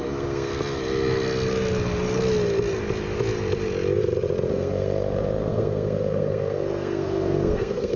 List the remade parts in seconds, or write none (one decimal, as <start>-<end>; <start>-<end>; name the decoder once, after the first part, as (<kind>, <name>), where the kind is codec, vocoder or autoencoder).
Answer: 0.0-0.5 (codec, SNAC); 4.5-8.0